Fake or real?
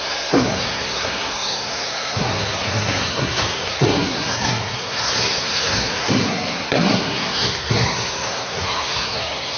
fake